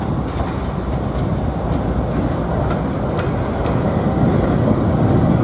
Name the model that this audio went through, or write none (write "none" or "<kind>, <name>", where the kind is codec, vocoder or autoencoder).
none